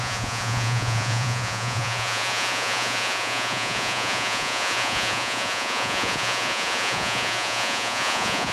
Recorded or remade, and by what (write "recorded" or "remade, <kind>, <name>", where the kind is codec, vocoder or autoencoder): remade, vocoder, Vocos